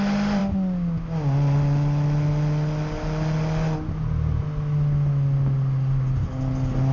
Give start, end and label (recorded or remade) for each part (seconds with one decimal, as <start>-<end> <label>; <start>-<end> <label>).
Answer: 0.0-6.9 recorded